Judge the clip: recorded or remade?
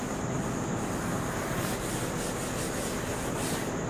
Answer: recorded